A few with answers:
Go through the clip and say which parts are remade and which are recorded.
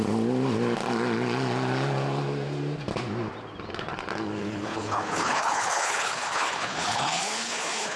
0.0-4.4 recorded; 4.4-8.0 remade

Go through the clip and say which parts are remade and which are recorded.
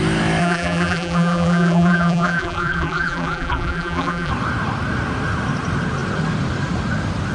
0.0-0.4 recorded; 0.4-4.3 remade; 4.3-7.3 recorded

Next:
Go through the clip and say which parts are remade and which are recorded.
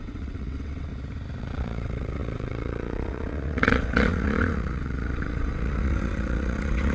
0.0-0.9 remade; 0.9-1.4 recorded; 1.4-6.9 remade